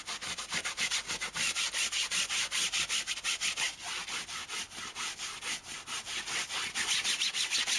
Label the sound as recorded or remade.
recorded